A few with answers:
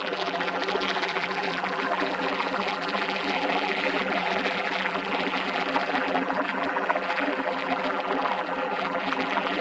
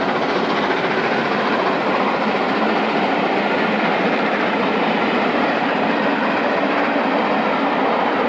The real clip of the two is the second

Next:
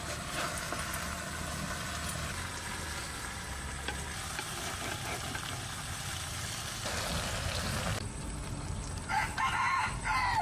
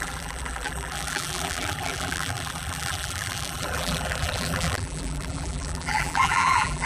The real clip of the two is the first